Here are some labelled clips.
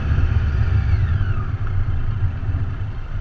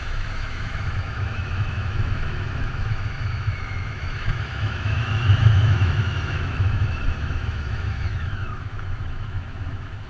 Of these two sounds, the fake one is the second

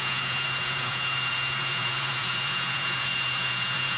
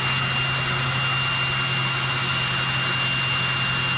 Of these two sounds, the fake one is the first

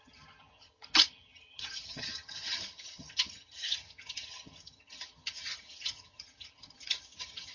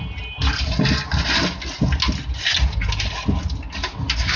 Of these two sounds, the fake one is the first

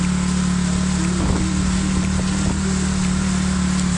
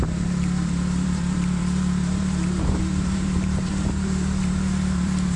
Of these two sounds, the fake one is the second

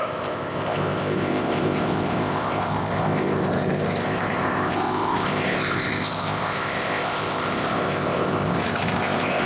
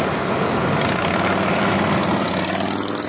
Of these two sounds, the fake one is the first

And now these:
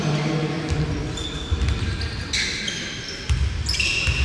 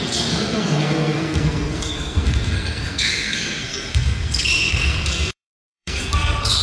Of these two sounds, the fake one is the second